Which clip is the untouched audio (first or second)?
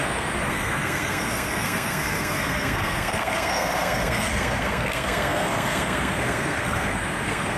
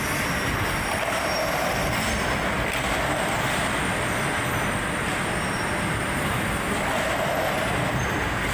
second